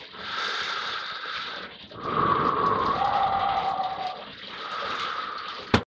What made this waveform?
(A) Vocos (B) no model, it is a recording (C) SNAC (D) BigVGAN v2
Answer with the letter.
B